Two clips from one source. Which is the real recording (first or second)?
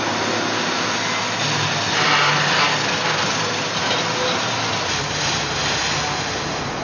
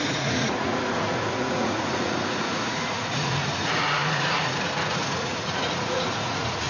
first